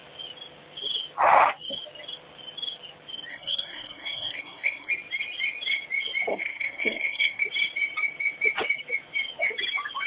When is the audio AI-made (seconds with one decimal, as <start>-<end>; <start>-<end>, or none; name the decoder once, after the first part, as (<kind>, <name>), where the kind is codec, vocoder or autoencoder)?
3.3-4.9 (codec, SNAC); 6.3-7.4